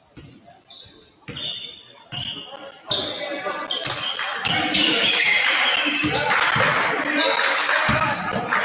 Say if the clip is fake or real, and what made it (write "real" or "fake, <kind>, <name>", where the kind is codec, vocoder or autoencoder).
fake, vocoder, BigVGAN v2